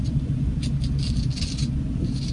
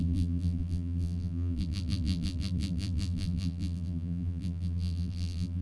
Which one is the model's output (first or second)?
second